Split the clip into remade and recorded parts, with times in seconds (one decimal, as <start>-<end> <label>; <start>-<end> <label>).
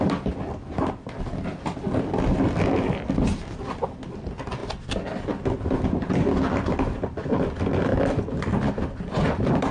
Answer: 0.0-9.7 recorded